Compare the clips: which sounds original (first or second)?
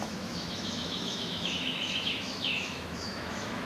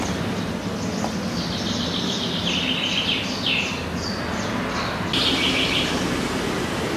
second